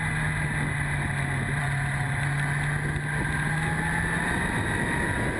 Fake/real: real